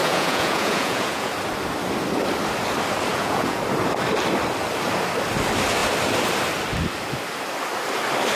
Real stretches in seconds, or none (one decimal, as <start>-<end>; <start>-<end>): 1.3-3.1; 3.6-8.4